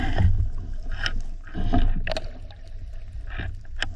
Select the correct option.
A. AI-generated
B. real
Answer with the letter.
B